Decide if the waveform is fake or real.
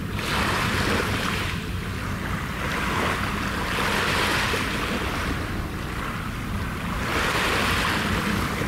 real